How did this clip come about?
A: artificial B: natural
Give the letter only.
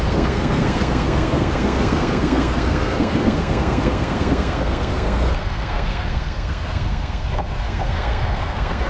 A